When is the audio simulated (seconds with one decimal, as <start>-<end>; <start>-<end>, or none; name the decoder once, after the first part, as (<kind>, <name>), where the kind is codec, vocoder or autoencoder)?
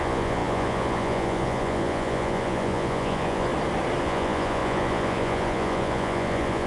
0.0-3.5 (vocoder, Vocos); 4.0-6.7